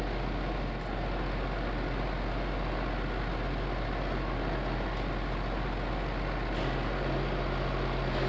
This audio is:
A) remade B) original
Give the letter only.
B